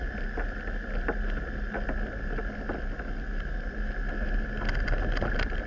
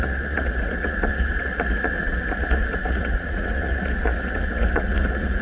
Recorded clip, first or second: first